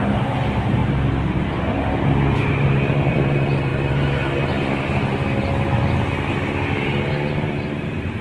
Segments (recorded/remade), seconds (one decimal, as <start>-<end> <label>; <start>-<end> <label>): 0.0-0.8 remade; 0.8-2.5 recorded; 2.5-3.7 remade; 3.7-6.3 recorded; 6.3-8.2 remade